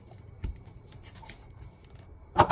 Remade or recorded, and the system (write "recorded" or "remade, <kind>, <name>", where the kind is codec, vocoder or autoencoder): remade, vocoder, BigVGAN v2